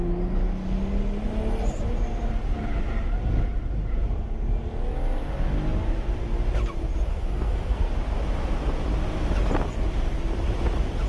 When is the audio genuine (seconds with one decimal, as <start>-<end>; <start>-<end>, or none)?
0.0-7.1; 7.9-11.1

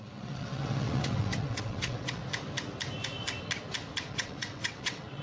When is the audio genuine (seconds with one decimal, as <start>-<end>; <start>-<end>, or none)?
2.2-4.1

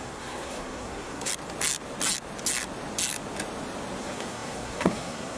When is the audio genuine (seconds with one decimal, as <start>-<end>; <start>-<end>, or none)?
1.3-4.0

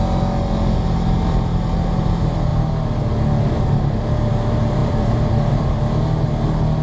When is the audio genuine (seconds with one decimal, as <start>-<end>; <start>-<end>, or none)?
0.0-4.8; 6.2-6.8

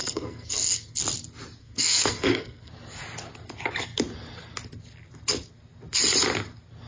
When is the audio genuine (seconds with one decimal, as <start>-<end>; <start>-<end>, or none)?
1.0-1.6; 2.7-6.9

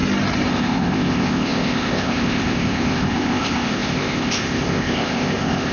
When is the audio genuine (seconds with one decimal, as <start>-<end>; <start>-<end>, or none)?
0.0-0.5

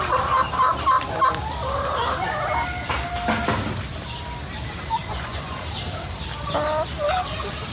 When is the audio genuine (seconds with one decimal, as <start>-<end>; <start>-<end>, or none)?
0.0-5.0; 5.6-7.7